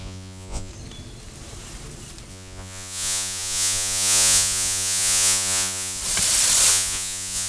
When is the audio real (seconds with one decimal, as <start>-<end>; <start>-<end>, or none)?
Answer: 0.7-2.3; 6.0-6.7